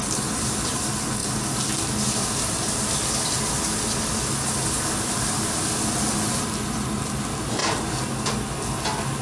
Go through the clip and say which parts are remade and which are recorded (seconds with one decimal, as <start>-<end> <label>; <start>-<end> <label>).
0.0-7.6 recorded; 7.6-8.4 remade; 8.4-9.2 recorded

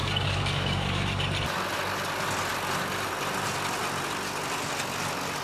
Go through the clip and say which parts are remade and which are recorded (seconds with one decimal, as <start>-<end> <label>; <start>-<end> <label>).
0.0-1.2 remade; 1.2-5.4 recorded

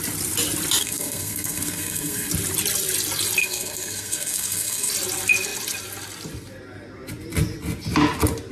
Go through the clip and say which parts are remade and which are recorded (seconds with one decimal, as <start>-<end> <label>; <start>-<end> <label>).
0.0-0.8 recorded; 0.8-2.3 remade; 2.3-3.4 recorded; 3.4-4.9 remade; 4.9-8.5 recorded

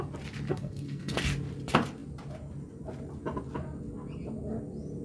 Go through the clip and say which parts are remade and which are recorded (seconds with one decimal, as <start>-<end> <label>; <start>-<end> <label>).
0.0-0.5 recorded; 0.5-1.2 remade; 1.2-5.0 recorded